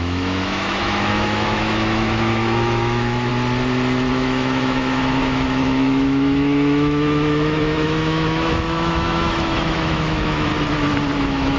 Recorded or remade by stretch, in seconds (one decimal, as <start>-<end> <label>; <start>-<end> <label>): 0.0-3.3 remade; 3.3-4.1 recorded; 4.1-10.5 remade; 10.5-11.2 recorded; 11.2-11.6 remade